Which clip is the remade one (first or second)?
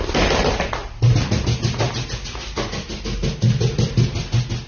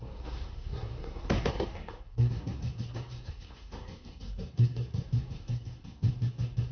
second